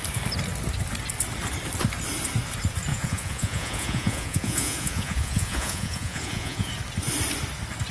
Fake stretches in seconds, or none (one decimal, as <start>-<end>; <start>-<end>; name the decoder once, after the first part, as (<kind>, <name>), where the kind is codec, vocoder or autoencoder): 2.9-6.7 (vocoder, Vocos)